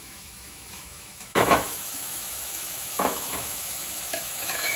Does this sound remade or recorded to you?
remade